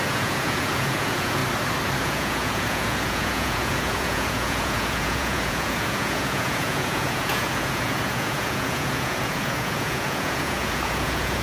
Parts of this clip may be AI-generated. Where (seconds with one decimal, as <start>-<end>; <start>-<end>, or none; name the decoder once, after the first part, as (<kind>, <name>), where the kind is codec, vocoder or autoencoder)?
0.0-1.4 (vocoder, Vocos); 2.0-11.4